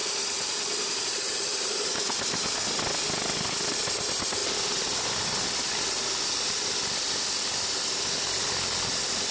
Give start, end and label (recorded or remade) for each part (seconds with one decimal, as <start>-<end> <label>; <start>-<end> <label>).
0.0-1.9 remade; 1.9-9.3 recorded